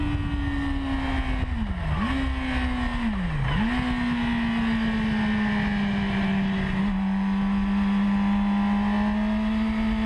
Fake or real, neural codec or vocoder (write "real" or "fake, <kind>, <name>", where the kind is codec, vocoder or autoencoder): real